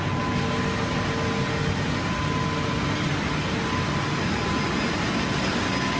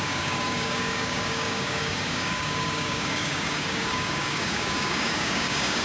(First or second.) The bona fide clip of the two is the first